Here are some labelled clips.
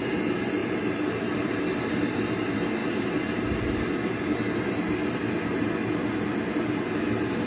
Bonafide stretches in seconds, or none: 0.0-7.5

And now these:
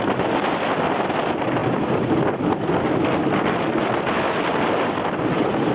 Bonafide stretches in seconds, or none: 0.0-5.7

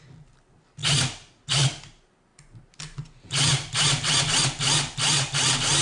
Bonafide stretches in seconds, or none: 0.0-5.8

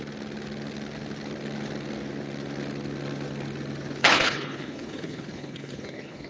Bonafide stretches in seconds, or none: 0.0-4.0

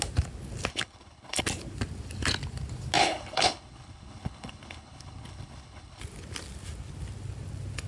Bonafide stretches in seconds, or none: 0.0-0.7; 1.4-3.0; 6.0-7.9

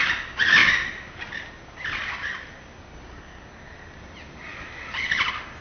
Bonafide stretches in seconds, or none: 0.0-5.6

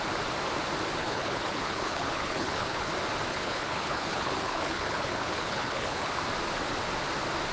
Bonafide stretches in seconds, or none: 0.0-1.0; 2.9-3.3; 6.1-7.5